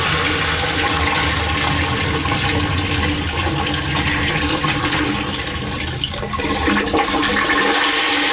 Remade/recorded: recorded